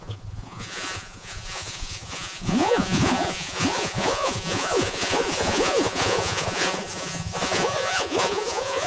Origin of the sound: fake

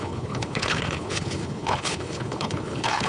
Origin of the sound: fake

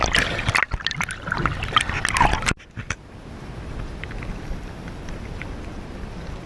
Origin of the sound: real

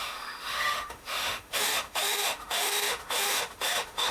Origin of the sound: fake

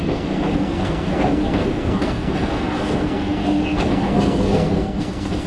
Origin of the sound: fake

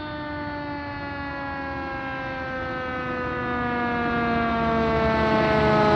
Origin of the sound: real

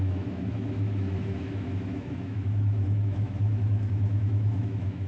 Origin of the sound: fake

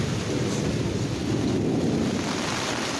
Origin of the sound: fake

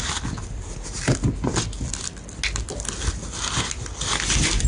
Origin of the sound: real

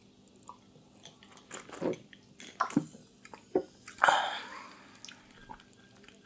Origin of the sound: real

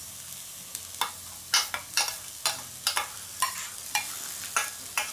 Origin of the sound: real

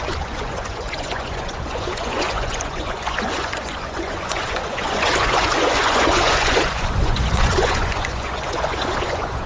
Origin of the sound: fake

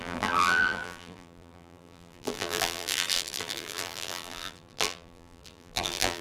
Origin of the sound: fake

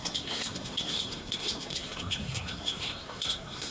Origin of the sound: fake